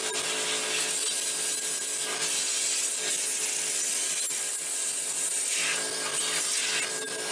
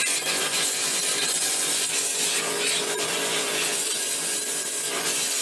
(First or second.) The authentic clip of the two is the first